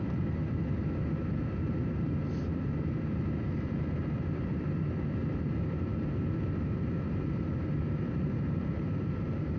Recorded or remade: remade